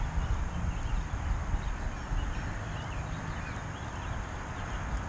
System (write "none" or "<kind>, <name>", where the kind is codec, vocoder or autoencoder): none